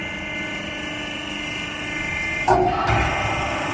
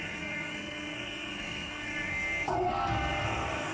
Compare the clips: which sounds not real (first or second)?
second